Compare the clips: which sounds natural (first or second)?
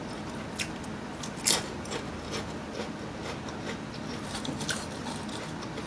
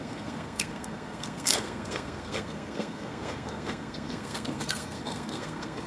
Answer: first